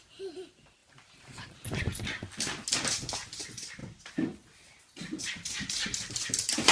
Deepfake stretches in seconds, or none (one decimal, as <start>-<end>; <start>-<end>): 0.0-2.2; 2.9-3.8; 5.2-6.7